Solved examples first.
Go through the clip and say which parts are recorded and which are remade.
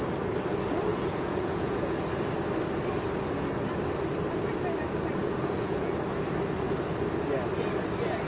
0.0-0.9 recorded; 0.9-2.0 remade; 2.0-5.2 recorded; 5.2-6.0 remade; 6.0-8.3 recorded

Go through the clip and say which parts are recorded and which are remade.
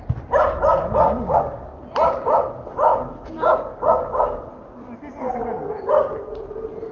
0.0-0.7 recorded; 0.7-1.6 remade; 1.6-2.9 recorded; 2.9-4.5 remade; 4.5-6.9 recorded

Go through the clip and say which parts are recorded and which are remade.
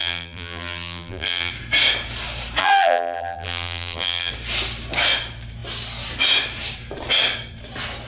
0.0-1.5 remade; 1.5-2.6 recorded; 2.6-4.3 remade; 4.3-8.1 recorded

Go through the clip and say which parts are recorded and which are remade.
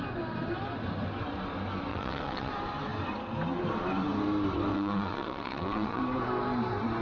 0.0-1.9 recorded; 1.9-2.5 remade; 2.5-4.7 recorded; 4.7-6.0 remade; 6.0-7.0 recorded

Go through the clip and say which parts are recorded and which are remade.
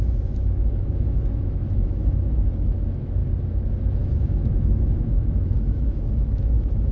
0.0-3.2 remade; 3.2-3.9 recorded; 3.9-6.9 remade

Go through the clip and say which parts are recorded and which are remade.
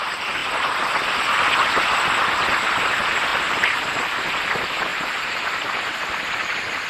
0.0-3.3 recorded; 3.3-3.8 remade; 3.8-4.9 recorded; 4.9-6.5 remade; 6.5-6.9 recorded